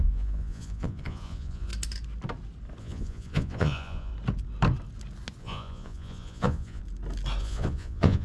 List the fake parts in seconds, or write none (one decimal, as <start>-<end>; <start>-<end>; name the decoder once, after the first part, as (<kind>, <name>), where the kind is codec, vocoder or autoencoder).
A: 0.0-1.7 (vocoder, Vocos); 2.8-4.1; 5.4-6.8; 7.4-8.2